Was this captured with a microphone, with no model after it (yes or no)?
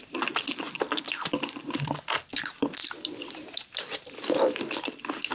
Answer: yes